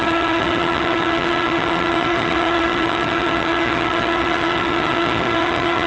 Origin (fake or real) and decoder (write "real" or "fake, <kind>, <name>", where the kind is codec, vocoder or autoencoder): fake, vocoder, HiFi-GAN